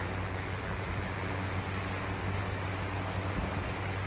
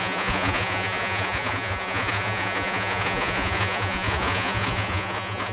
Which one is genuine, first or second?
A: first